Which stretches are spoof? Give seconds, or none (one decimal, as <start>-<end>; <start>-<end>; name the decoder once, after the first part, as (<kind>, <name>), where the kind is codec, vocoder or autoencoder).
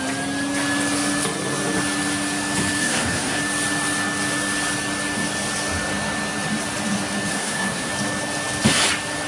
2.8-3.4 (codec, SNAC); 7.3-7.9